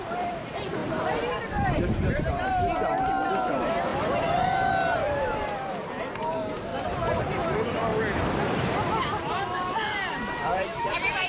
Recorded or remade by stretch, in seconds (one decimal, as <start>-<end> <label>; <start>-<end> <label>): 0.0-0.8 remade; 0.8-1.5 recorded; 1.5-6.7 remade; 6.7-7.2 recorded; 7.2-7.9 remade; 7.9-8.5 recorded; 8.5-11.3 remade